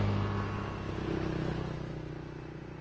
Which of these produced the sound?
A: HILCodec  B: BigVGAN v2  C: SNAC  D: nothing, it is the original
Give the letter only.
D